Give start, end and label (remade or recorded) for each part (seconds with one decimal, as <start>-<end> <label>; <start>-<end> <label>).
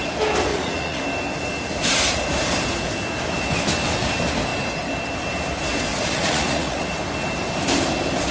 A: 0.0-0.5 recorded; 0.5-1.0 remade; 1.0-5.9 recorded; 5.9-6.9 remade; 6.9-8.3 recorded